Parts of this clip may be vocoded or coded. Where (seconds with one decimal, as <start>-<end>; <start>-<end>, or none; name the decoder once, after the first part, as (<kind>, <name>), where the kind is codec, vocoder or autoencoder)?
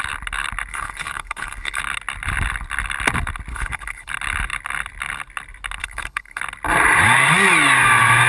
0.7-1.8 (codec, HILCodec); 3.5-4.1; 5.8-6.4